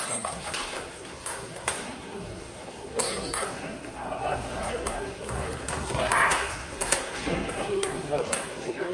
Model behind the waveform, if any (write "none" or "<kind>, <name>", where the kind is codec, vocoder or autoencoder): codec, SNAC